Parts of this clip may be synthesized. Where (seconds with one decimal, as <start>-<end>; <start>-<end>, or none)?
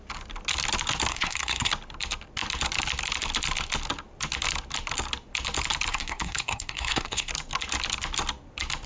1.1-1.7; 5.9-7.3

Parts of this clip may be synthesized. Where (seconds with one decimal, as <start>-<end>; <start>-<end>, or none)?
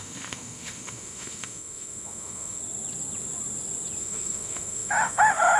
0.0-2.6; 4.0-5.6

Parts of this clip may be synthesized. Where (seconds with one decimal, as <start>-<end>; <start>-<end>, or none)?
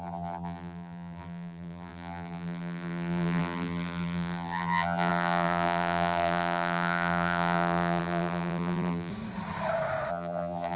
0.0-9.1; 10.1-10.8